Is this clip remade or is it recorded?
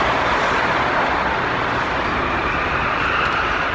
remade